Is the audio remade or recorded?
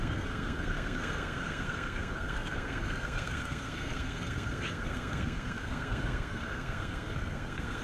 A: remade